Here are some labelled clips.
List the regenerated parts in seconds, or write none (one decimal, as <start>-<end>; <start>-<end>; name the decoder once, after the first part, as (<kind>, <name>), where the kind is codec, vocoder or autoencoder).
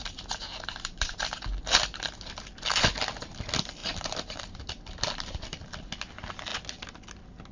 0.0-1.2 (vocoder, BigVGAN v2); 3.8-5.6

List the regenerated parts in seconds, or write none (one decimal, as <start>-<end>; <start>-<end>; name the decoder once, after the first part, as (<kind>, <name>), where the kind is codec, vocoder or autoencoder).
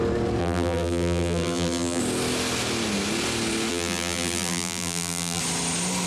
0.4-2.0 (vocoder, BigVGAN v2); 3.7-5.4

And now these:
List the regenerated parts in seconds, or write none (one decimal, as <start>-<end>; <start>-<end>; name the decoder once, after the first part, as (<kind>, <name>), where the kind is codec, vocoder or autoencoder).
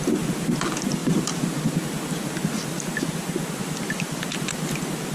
1.0-1.7 (vocoder, BigVGAN v2); 3.6-4.2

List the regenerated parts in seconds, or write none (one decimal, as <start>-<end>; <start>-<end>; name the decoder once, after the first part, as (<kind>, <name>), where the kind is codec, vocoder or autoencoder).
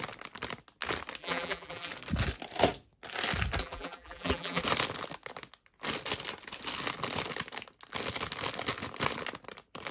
1.2-1.9 (vocoder, BigVGAN v2); 3.6-4.6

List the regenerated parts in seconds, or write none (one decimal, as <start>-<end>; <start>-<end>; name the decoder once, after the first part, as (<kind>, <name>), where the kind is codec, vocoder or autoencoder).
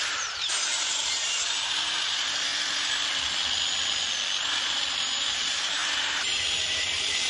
0.0-2.5 (vocoder, BigVGAN v2); 5.0-7.3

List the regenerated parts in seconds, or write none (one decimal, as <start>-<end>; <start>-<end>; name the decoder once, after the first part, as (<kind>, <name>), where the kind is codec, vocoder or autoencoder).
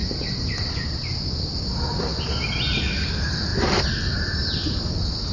none